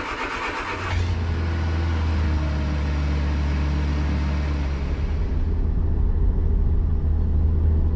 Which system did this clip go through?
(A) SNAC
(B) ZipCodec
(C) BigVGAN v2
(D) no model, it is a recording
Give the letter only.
D